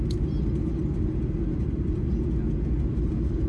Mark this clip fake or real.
real